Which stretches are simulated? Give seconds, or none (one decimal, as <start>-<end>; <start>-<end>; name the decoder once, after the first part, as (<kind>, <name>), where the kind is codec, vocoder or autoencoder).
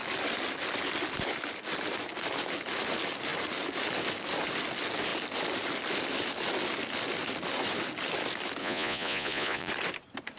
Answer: 8.6-9.7 (vocoder, Vocos)